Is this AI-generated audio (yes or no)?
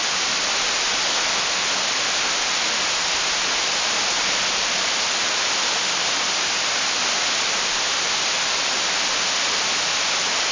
no